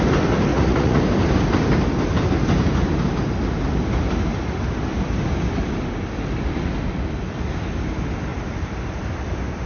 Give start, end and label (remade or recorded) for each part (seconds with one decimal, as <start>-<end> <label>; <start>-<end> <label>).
0.0-0.5 recorded; 0.5-1.0 remade; 1.0-9.7 recorded